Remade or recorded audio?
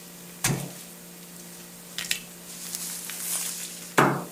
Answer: recorded